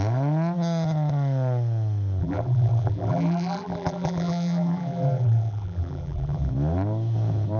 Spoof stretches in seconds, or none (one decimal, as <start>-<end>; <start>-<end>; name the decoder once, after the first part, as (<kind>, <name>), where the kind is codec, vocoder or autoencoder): 2.2-6.5 (vocoder, BigVGAN v2)